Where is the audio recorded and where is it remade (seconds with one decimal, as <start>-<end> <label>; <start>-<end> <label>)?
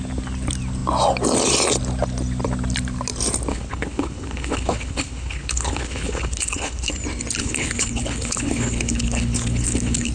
0.0-3.5 recorded; 3.5-6.9 remade; 6.9-7.4 recorded; 7.4-10.1 remade